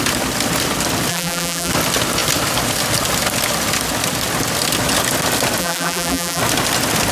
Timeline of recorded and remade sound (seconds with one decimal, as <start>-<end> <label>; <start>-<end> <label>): 0.0-1.1 recorded; 1.1-1.7 remade; 1.7-5.6 recorded; 5.6-6.4 remade; 6.4-7.1 recorded